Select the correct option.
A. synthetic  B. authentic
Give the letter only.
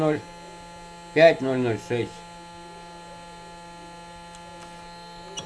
B